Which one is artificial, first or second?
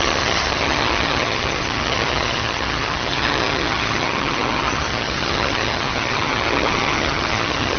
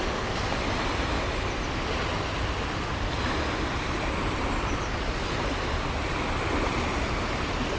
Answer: first